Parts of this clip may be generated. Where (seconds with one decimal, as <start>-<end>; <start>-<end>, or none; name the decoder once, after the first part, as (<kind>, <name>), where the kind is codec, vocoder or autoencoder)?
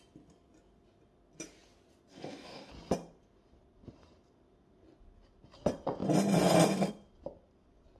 2.1-2.7 (codec, DAC)